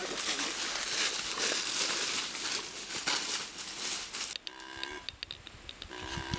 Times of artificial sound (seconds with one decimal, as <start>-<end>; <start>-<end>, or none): none